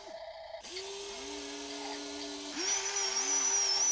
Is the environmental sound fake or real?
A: real